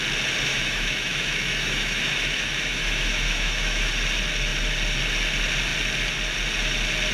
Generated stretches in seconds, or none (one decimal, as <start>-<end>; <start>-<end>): 0.5-3.9